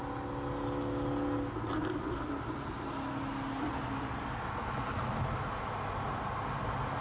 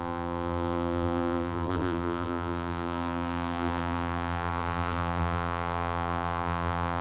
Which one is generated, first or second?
second